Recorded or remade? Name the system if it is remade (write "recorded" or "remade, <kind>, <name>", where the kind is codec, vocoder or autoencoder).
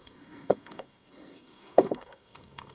remade, codec, SNAC